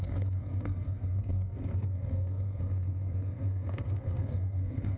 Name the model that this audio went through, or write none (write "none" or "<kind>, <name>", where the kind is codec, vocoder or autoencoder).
codec, SNAC